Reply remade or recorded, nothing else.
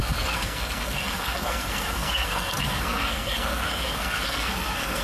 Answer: remade